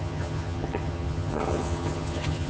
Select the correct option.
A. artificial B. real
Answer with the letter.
A